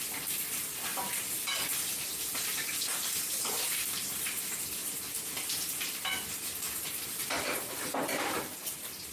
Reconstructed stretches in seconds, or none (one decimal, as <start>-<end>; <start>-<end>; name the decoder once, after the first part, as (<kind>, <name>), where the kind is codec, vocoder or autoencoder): 0.0-9.1 (vocoder, BigVGAN v2)